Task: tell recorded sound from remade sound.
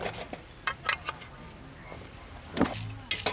recorded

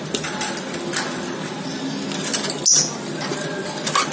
recorded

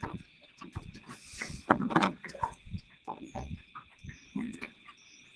remade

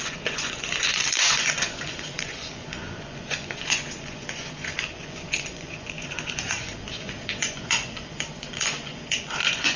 remade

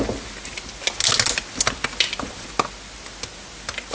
recorded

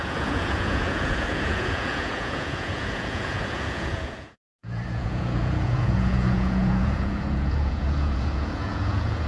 remade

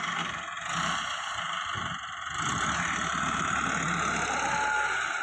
recorded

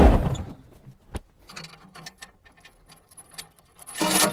recorded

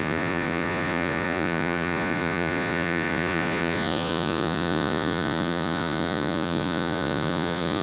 remade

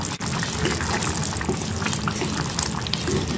recorded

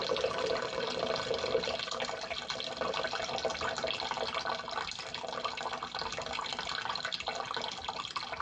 recorded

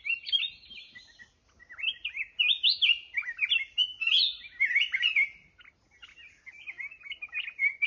recorded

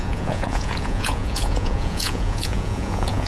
remade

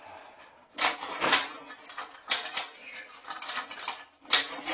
recorded